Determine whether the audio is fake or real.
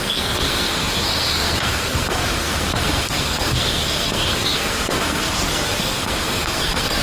fake